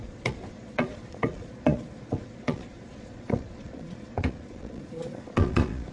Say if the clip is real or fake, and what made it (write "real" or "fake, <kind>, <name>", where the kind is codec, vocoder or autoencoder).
fake, vocoder, Vocos